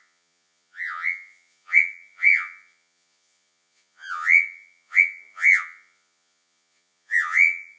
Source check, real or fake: fake